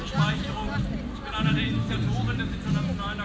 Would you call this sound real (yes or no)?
yes